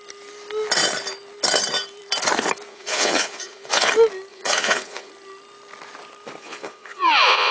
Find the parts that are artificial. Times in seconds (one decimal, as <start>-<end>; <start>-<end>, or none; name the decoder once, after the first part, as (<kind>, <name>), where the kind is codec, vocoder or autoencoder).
2.7-3.9 (vocoder, Vocos); 4.3-5.1; 6.4-7.5